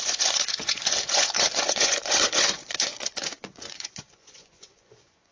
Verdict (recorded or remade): remade